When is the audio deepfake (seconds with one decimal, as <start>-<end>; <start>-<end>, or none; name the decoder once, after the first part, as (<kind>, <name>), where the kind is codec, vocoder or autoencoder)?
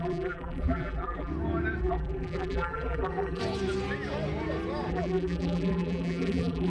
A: 0.0-1.3 (vocoder, BigVGAN v2); 1.8-3.4; 4.9-6.7